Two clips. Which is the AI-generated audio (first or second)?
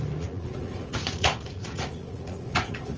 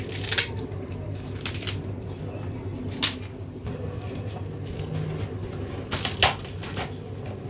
first